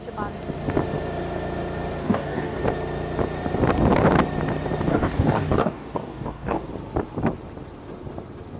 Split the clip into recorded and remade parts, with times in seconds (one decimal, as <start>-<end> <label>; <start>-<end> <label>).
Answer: 0.0-2.0 recorded; 2.0-2.6 remade; 2.6-4.9 recorded; 4.9-6.7 remade; 6.7-8.6 recorded